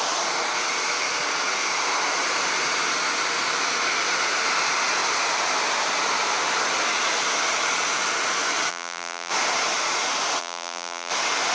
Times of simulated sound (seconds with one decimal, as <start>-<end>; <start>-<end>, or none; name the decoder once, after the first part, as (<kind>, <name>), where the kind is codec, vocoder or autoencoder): 8.7-9.3 (vocoder, BigVGAN v2); 10.4-11.1